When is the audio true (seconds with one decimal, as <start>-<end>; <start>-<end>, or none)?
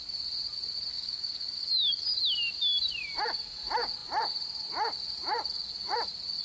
0.0-0.9; 2.0-6.4